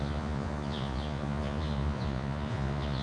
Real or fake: fake